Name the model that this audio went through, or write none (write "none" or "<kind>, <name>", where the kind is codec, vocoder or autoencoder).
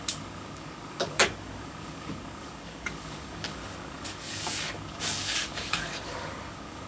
codec, DAC